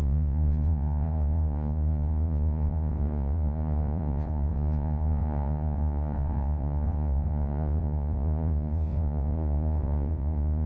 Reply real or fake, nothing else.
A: fake